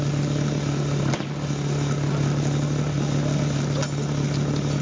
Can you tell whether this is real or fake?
real